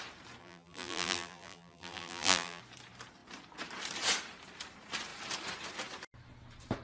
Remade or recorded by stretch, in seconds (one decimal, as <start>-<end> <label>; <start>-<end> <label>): 0.0-0.4 recorded; 0.4-2.6 remade; 2.6-6.8 recorded